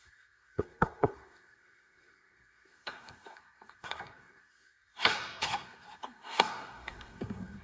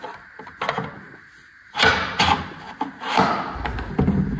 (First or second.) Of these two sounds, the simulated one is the first